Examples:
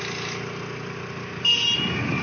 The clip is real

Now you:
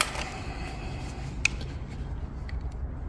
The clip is real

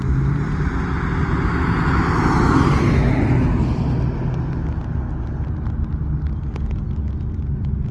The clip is real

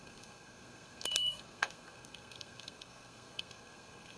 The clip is fake